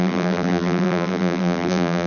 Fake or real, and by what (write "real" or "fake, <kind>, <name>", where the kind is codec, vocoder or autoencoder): fake, vocoder, BigVGAN v2